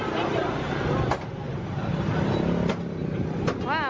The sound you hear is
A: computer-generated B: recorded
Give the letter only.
B